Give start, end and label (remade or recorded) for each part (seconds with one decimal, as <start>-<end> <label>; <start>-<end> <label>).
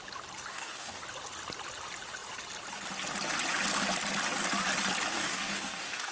0.0-0.5 recorded; 0.5-1.0 remade; 1.0-5.1 recorded; 5.1-6.1 remade